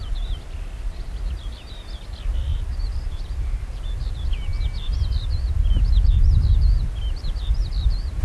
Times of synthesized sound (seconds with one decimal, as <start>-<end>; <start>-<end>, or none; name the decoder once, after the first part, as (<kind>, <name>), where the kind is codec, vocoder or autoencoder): 2.5-3.6 (vocoder, BigVGAN v2)